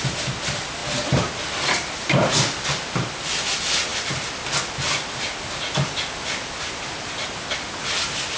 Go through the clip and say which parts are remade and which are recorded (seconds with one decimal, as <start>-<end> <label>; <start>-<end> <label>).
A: 0.0-8.4 recorded